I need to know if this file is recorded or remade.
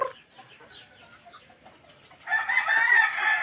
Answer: recorded